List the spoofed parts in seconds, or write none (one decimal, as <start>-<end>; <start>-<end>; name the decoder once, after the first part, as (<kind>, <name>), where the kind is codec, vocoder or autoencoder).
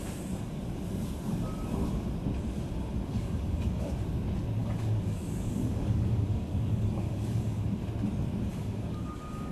3.1-3.9 (codec, DAC); 4.6-7.6; 8.5-9.5